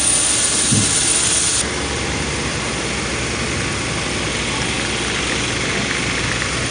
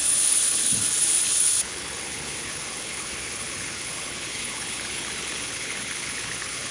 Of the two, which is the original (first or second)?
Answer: first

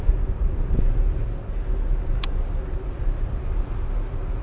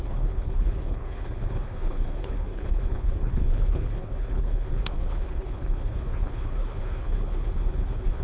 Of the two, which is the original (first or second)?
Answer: first